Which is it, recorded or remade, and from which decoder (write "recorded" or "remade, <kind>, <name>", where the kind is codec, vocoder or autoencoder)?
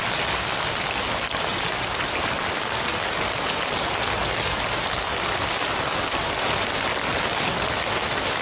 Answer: recorded